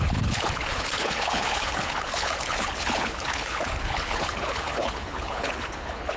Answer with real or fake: fake